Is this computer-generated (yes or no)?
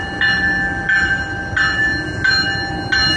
no